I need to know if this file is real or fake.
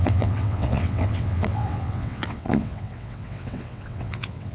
fake